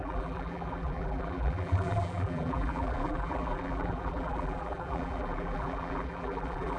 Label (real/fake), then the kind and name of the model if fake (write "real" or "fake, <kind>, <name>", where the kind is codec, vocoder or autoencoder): fake, vocoder, BigVGAN v2